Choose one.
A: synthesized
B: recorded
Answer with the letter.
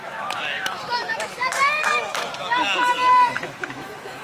A